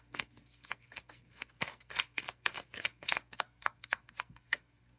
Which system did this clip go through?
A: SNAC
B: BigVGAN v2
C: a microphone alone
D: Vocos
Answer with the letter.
A